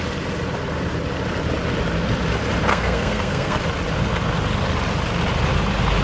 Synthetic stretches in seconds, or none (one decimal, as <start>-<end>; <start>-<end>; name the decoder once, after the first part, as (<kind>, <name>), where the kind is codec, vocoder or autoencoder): 2.7-3.6 (codec, SNAC)